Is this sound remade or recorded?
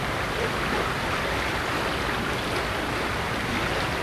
recorded